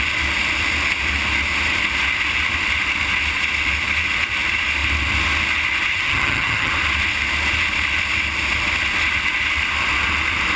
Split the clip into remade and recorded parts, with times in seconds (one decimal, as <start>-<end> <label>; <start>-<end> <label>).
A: 0.0-5.9 recorded; 5.9-6.7 remade; 6.7-10.6 recorded